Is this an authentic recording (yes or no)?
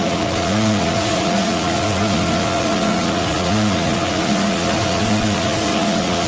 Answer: no